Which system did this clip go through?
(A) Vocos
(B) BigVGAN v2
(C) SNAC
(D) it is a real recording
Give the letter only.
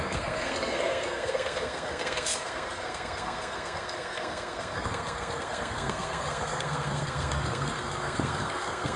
C